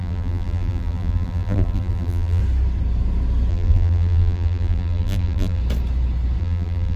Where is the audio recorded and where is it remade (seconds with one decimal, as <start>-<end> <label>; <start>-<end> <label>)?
0.0-2.4 remade; 2.4-3.5 recorded; 3.5-5.6 remade; 5.6-6.4 recorded; 6.4-7.0 remade

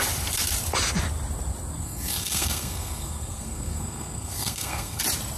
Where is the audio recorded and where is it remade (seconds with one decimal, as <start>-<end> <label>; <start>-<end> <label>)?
0.0-1.8 recorded; 1.8-5.0 remade; 5.0-5.4 recorded